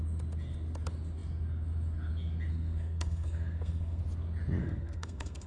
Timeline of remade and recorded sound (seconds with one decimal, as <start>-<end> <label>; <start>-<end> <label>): 0.0-2.5 recorded; 2.5-4.0 remade; 4.0-4.6 recorded; 4.6-5.5 remade